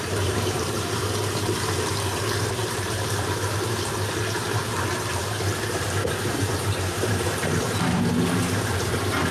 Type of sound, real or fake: fake